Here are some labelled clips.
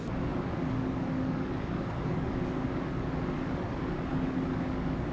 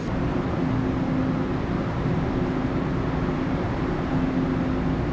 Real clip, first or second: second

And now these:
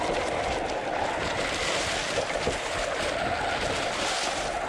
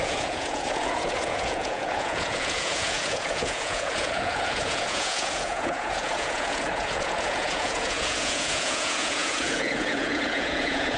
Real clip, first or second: first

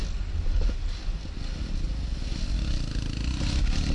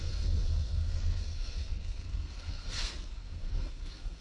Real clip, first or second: first